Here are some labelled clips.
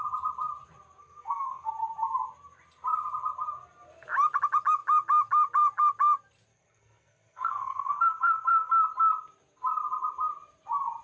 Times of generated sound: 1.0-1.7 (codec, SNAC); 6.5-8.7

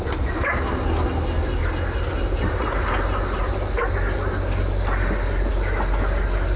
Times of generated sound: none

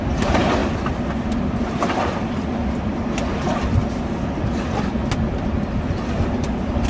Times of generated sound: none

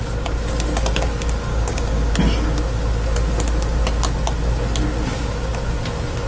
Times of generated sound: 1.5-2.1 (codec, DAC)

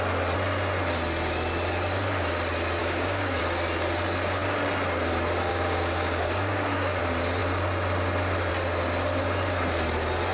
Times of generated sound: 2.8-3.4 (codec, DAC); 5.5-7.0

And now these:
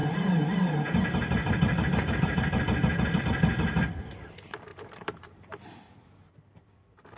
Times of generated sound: 0.0-3.2 (vocoder, BigVGAN v2); 4.7-6.3

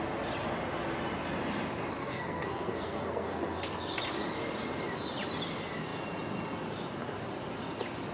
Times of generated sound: 2.0-3.6 (codec, SNAC)